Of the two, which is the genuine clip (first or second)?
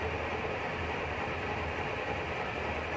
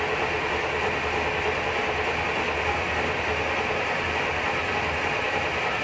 second